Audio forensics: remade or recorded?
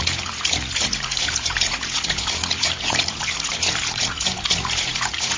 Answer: remade